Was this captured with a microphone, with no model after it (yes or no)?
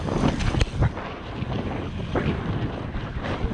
yes